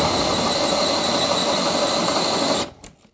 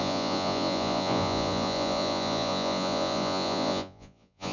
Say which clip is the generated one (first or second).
second